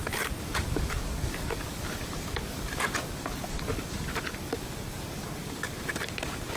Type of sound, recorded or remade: remade